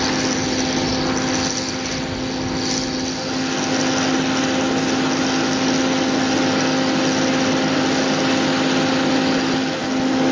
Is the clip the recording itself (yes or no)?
yes